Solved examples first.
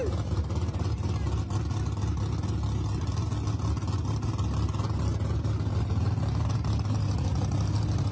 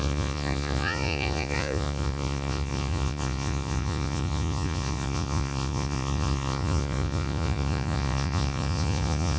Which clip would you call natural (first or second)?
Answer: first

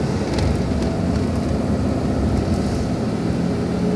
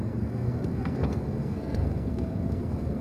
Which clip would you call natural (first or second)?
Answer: first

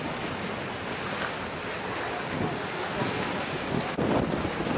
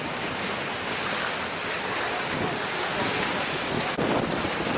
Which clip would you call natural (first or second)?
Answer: first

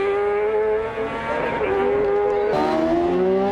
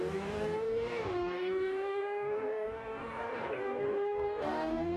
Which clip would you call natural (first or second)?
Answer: first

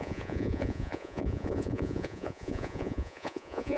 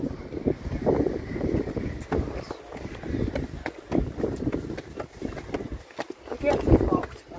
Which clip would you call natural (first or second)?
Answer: second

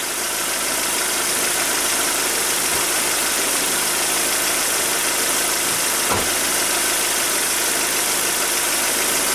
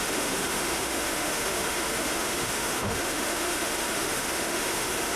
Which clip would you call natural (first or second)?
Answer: first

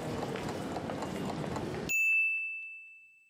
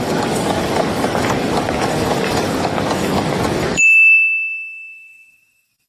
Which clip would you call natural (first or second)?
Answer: first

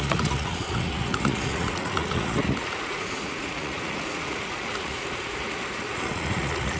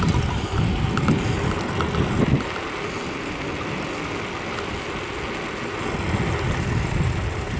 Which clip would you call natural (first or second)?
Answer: second